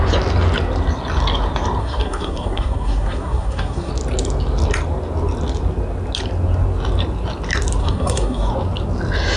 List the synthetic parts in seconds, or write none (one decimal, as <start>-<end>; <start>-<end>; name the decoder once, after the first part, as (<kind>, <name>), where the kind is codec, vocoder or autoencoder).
1.8-3.9 (codec, SNAC); 7.8-8.5